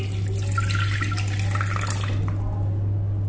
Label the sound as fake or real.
real